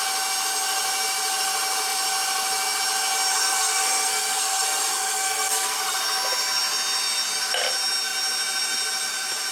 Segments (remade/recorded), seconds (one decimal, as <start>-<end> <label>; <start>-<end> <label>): 0.0-3.4 recorded; 3.4-6.0 remade; 6.0-9.5 recorded